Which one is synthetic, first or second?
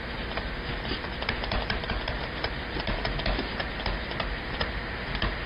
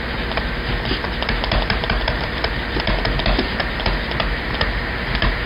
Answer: first